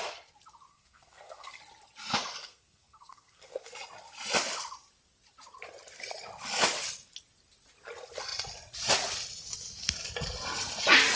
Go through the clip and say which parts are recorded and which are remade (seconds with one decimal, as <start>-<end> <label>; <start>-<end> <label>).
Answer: 0.0-0.7 recorded; 0.7-1.5 remade; 1.5-2.4 recorded; 2.4-3.7 remade; 3.7-11.2 recorded